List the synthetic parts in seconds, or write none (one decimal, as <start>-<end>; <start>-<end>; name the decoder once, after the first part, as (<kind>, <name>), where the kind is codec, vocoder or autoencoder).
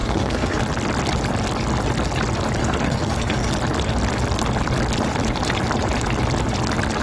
0.0-0.6 (codec, SNAC); 2.6-3.5